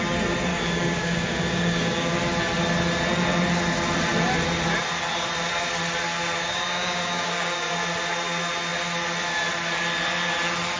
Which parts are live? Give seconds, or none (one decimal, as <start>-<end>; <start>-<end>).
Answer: 0.0-0.5; 2.1-6.4; 7.7-10.8